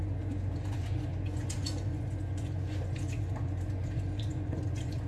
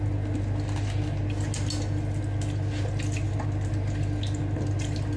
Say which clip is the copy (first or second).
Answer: first